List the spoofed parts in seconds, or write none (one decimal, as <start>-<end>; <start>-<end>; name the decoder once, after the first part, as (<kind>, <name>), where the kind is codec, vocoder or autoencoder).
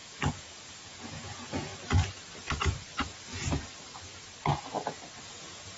0.0-1.7 (vocoder, Vocos); 5.2-5.8